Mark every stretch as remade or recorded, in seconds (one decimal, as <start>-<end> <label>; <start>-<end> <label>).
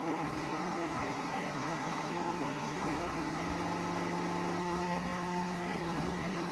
0.0-3.4 remade; 3.4-4.6 recorded; 4.6-6.5 remade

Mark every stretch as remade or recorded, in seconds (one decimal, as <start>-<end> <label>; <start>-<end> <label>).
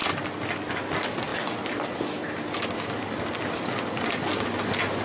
0.0-5.0 recorded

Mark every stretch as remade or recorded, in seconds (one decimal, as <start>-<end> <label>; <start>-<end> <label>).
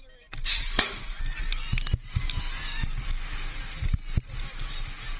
0.0-5.2 recorded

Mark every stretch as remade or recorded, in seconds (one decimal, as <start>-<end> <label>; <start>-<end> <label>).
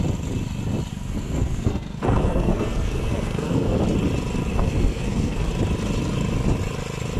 0.0-0.9 recorded; 0.9-3.8 remade; 3.8-4.5 recorded; 4.5-5.5 remade; 5.5-7.2 recorded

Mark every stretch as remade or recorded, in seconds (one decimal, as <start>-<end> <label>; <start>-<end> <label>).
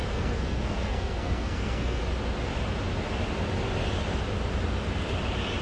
0.0-2.0 remade; 2.0-5.6 recorded